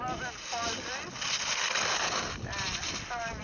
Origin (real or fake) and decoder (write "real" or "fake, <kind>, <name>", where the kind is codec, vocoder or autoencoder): real